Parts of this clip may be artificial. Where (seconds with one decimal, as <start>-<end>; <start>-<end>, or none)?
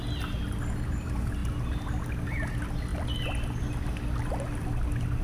none